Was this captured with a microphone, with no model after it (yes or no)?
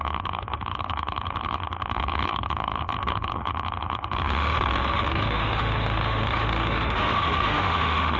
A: no